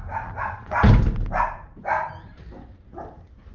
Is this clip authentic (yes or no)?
yes